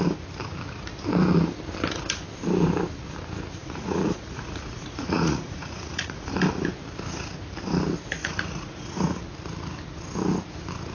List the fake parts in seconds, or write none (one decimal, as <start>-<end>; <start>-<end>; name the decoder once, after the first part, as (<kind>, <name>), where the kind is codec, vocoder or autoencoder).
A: 3.6-6.3 (vocoder, Vocos); 8.2-9.2